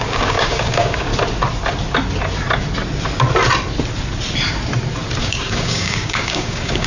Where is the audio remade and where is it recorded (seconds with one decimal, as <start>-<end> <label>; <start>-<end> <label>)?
0.0-1.1 remade; 1.1-5.2 recorded; 5.2-6.9 remade